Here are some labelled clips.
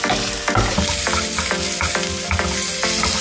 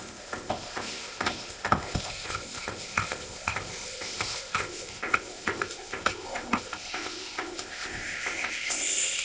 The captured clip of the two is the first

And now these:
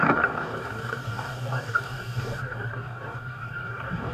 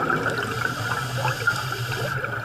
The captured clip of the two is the second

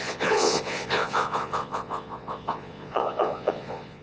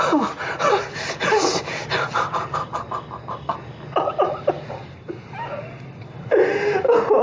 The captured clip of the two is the second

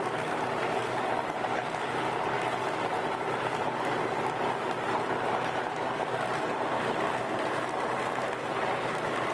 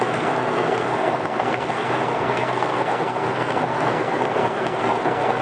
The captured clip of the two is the first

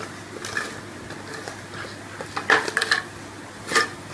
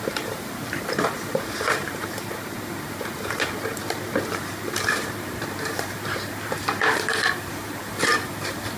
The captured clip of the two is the first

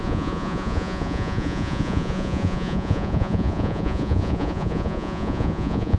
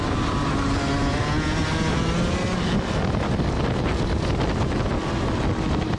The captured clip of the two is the second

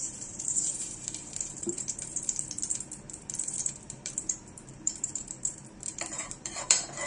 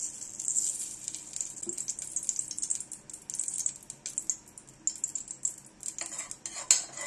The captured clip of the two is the second